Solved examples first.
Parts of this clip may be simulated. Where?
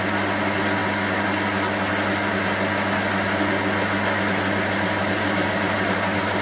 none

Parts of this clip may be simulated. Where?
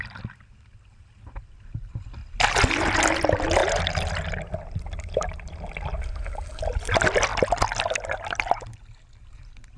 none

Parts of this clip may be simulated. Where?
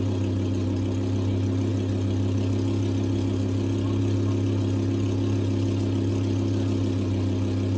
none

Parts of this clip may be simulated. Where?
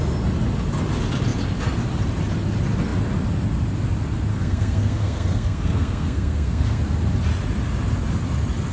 4.3-6.8 (codec, SNAC)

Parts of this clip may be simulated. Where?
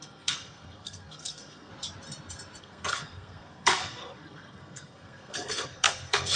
0.0-1.7 (codec, SNAC); 2.6-6.4